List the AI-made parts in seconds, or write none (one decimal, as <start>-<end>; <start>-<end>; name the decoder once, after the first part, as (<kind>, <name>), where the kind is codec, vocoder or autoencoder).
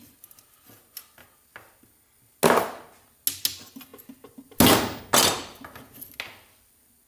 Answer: none